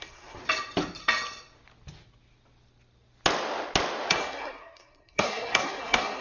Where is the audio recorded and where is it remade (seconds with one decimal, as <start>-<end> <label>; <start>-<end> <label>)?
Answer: 0.0-0.4 remade; 0.4-4.1 recorded; 4.1-6.2 remade